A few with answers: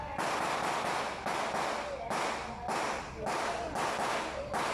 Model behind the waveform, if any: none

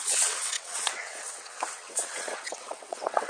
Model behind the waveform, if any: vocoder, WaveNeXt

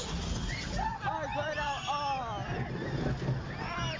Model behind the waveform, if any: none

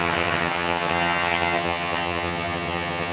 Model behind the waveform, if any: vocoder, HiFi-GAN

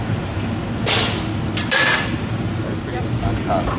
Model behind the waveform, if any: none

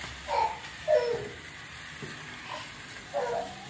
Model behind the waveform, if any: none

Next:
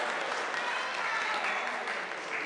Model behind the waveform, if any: none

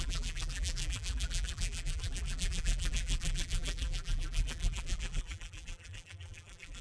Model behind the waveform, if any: vocoder, BigVGAN v2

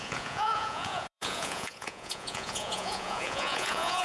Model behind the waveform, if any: vocoder, Vocos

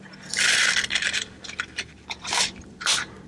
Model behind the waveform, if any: vocoder, BigVGAN v2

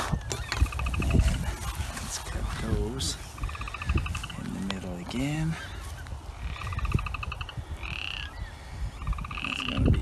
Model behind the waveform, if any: none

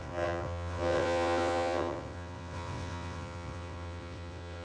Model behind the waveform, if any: vocoder, WaveNeXt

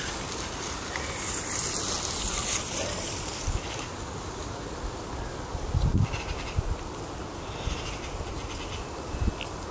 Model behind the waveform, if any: none